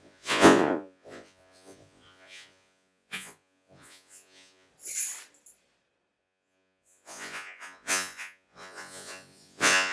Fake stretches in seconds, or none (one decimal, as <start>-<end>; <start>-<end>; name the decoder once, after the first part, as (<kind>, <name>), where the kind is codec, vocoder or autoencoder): 0.0-4.7 (vocoder, Vocos); 6.2-9.9